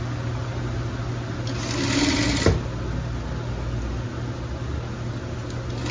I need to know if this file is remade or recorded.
recorded